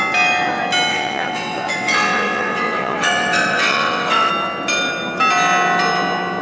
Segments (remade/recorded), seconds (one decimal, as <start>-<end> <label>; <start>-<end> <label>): 0.0-0.9 recorded; 0.9-4.3 remade; 4.3-6.4 recorded